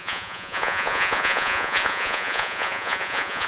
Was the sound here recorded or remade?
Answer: remade